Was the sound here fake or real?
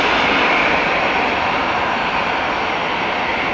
real